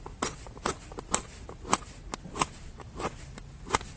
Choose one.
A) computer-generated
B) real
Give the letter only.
B